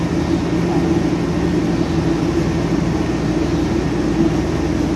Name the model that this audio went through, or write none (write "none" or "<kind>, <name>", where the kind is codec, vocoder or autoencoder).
none